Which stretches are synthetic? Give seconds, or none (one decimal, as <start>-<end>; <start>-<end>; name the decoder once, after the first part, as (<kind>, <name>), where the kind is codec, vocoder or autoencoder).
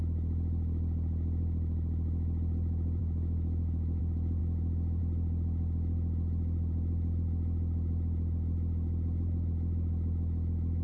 3.0-4.0 (autoencoder, DAC-VAE); 4.4-5.0